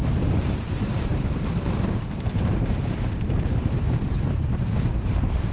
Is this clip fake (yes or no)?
yes